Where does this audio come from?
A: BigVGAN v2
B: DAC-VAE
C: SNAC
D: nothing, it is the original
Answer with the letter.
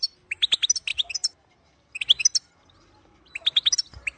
D